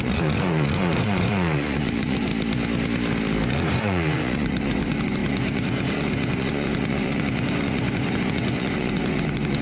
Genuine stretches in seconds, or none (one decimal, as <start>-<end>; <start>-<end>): 2.3-3.7